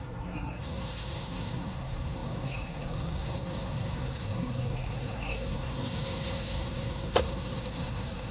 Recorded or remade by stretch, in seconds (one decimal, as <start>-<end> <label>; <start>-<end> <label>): 0.0-8.3 remade